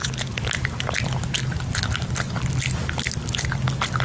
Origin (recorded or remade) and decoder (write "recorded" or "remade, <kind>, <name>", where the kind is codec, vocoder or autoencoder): recorded